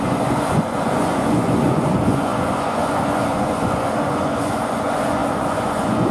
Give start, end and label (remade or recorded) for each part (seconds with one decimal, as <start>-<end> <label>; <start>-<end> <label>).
0.0-6.1 remade